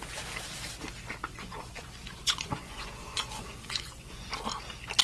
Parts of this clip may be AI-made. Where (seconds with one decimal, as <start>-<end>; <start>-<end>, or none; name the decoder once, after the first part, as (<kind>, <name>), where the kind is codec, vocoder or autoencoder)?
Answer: 1.3-4.3 (vocoder, Vocos)